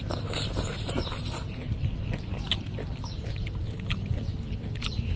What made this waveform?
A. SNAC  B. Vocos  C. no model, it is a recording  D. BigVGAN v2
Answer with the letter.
C